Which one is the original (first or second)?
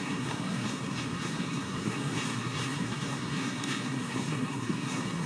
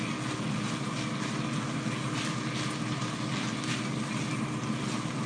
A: second